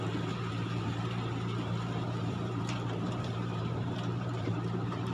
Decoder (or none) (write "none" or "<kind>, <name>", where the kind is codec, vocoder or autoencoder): vocoder, BigVGAN v2